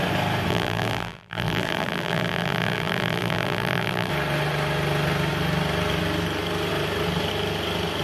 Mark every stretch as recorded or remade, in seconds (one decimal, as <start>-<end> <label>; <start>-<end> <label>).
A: 0.0-0.5 recorded; 0.5-4.1 remade; 4.1-8.0 recorded